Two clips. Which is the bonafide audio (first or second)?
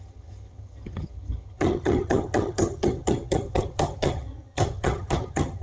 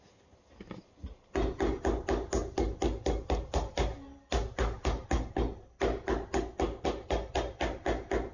second